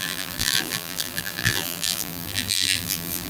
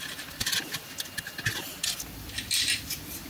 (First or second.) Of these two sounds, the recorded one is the second